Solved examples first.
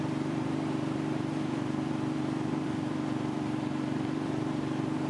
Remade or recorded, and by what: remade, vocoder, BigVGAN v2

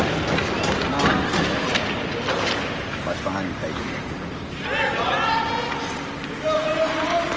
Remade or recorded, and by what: recorded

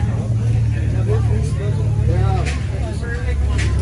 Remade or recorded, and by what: recorded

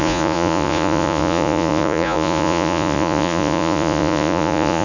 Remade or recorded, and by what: remade, vocoder, Vocos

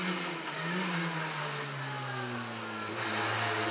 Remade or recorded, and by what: recorded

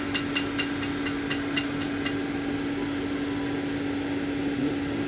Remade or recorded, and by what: recorded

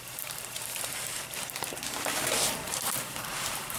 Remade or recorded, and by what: remade, vocoder, BigVGAN v2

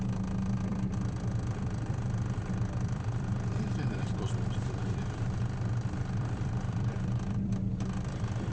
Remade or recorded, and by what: remade, vocoder, BigVGAN v2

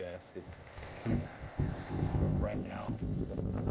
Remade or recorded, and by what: remade, codec, ZipCodec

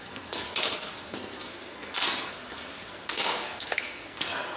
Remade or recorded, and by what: remade, codec, SNAC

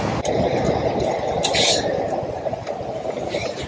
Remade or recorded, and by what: recorded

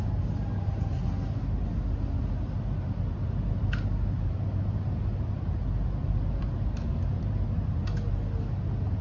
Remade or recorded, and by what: recorded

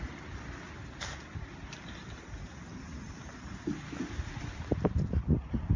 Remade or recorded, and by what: recorded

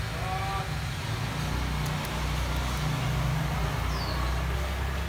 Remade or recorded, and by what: recorded